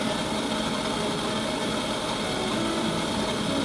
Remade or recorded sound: recorded